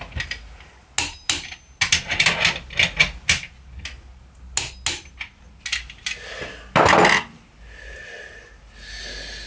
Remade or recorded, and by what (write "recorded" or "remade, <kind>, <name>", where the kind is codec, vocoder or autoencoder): recorded